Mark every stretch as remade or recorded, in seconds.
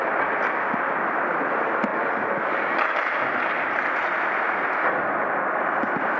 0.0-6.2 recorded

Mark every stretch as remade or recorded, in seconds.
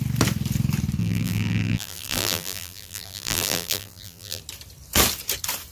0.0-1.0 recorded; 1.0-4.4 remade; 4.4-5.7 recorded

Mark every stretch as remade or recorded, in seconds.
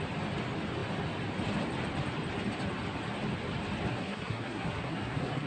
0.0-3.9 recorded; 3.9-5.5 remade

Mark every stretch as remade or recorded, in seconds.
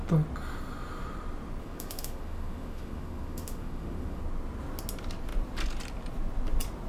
0.0-1.6 recorded; 1.6-4.2 remade; 4.2-6.9 recorded